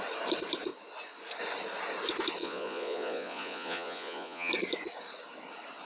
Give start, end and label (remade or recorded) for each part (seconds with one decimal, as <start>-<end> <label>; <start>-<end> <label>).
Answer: 0.0-2.4 recorded; 2.4-4.5 remade; 4.5-5.9 recorded

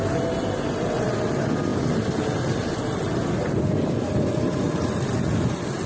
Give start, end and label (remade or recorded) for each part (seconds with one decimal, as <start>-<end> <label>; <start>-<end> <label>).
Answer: 0.0-1.7 recorded; 1.7-5.2 remade; 5.2-5.9 recorded

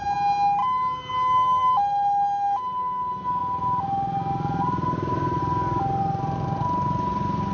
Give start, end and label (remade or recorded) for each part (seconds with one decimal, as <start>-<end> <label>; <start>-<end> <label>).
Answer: 0.0-7.5 recorded

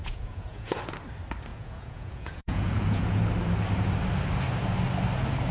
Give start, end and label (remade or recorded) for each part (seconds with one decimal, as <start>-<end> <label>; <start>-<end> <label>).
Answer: 0.0-0.8 remade; 0.8-1.5 recorded; 1.5-3.2 remade; 3.2-5.5 recorded

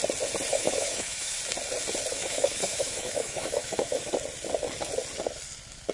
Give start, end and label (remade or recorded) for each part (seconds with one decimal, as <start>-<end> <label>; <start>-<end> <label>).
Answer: 0.0-0.5 recorded; 0.5-1.4 remade; 1.4-2.1 recorded; 2.1-4.1 remade; 4.1-5.9 recorded

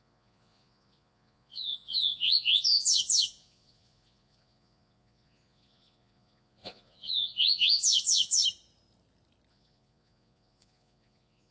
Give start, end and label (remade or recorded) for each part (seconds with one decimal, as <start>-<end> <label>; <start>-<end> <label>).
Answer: 0.0-8.4 remade; 8.4-9.5 recorded; 9.5-11.5 remade

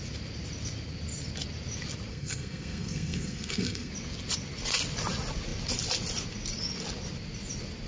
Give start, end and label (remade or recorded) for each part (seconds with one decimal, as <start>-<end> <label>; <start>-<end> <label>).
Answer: 0.0-2.1 recorded; 2.1-3.9 remade; 3.9-7.9 recorded